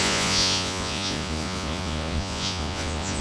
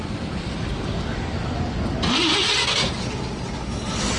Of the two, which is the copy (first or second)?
first